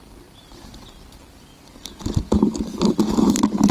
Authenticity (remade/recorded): remade